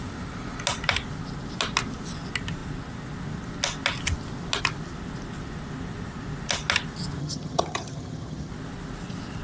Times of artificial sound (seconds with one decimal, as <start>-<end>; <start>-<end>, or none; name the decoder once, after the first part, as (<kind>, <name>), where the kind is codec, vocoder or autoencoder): 7.2-8.5 (vocoder, HiFi-GAN)